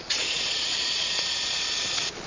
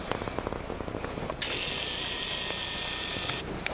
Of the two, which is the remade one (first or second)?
first